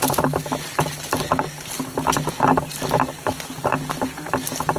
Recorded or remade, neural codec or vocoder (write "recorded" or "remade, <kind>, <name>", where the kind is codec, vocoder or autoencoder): recorded